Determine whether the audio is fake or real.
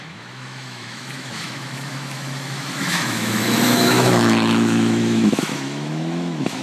fake